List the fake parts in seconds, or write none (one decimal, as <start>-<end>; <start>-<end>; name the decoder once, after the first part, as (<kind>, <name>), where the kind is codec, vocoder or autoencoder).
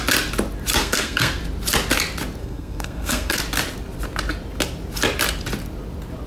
0.8-1.4 (codec, SNAC); 2.4-3.4